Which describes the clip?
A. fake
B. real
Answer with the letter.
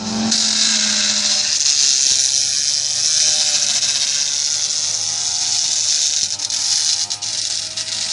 B